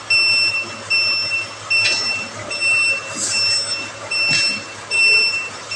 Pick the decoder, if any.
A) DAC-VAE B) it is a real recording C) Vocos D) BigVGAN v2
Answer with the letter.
B